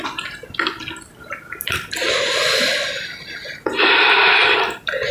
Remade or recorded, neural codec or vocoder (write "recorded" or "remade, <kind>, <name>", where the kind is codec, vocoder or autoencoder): recorded